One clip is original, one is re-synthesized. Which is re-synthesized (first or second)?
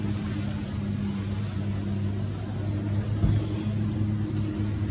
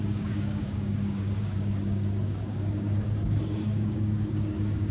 second